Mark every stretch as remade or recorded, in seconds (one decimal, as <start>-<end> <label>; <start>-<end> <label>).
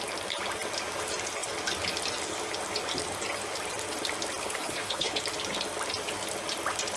0.0-4.4 recorded; 4.4-5.2 remade; 5.2-7.0 recorded